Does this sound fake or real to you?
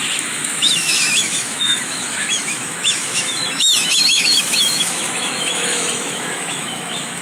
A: fake